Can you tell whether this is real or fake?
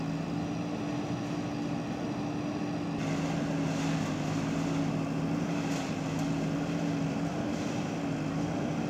real